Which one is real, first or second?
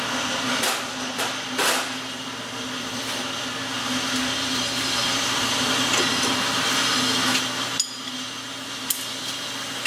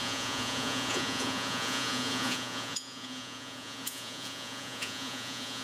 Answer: first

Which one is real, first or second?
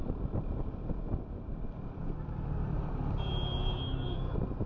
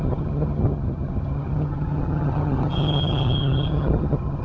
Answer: first